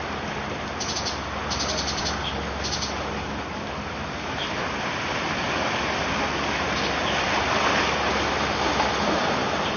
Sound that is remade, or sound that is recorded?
recorded